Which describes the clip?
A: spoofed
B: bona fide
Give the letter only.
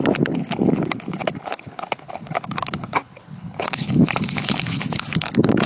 A